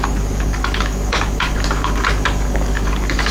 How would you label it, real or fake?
fake